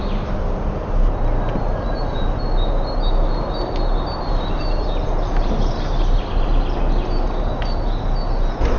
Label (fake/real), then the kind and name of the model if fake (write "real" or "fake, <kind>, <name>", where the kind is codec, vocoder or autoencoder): real